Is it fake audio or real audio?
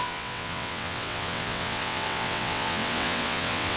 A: fake